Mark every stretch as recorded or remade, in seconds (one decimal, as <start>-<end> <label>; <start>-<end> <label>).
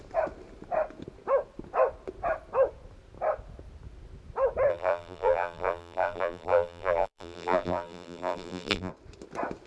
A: 0.0-4.7 recorded; 4.7-8.9 remade; 8.9-9.7 recorded